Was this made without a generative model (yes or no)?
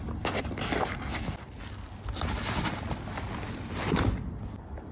yes